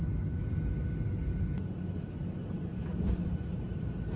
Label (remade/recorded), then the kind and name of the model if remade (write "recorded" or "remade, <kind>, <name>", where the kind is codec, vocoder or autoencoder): recorded